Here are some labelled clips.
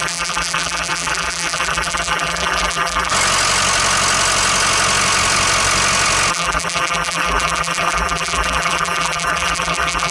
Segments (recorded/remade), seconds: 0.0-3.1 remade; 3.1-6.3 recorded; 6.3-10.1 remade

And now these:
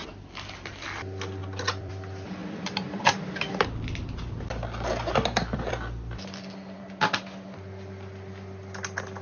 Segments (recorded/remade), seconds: 0.0-1.4 recorded; 1.4-1.9 remade; 1.9-2.4 recorded; 2.4-6.8 remade; 6.8-9.2 recorded

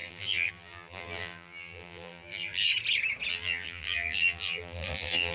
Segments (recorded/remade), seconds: 0.0-2.7 remade; 2.7-3.3 recorded; 3.3-5.3 remade

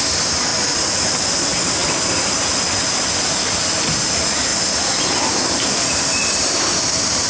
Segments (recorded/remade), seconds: 0.0-0.5 recorded; 0.5-1.2 remade; 1.2-4.5 recorded; 4.5-6.7 remade; 6.7-7.3 recorded

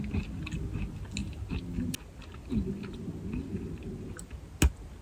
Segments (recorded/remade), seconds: 0.0-5.0 recorded